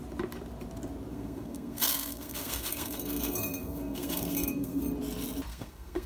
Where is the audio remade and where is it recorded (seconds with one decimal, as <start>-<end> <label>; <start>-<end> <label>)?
0.0-1.1 recorded; 1.1-4.8 remade; 4.8-5.5 recorded; 5.5-6.1 remade